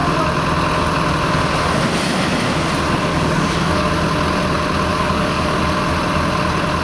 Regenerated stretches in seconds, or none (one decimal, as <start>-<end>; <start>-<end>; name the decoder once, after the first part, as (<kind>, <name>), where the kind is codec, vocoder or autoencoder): 3.1-3.9 (codec, DAC); 4.9-5.6